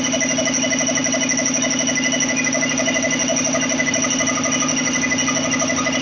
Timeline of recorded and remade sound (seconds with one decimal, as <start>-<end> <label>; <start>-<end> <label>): 0.0-6.0 recorded